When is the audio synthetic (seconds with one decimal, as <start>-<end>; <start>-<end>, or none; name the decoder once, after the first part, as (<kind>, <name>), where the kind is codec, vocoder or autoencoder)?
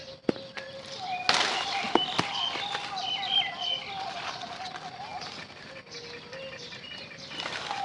none